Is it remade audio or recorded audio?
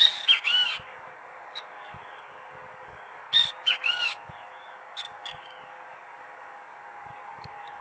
remade